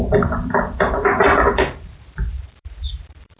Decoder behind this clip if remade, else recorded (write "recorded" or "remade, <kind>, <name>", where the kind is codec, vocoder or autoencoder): remade, vocoder, BigVGAN v2